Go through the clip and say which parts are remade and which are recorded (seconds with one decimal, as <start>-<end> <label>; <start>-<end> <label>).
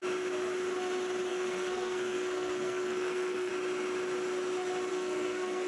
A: 0.0-1.3 recorded; 1.3-3.5 remade; 3.5-4.9 recorded; 4.9-5.7 remade